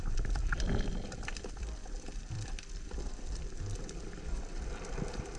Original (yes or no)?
no